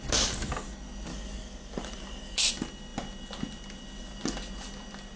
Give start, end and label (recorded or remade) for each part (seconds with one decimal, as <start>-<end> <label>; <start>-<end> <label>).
0.0-1.1 recorded; 1.1-2.5 remade; 2.5-5.2 recorded